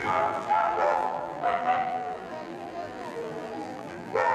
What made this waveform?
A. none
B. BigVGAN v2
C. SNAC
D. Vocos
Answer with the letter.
B